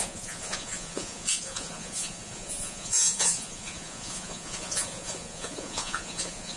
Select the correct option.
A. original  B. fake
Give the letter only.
B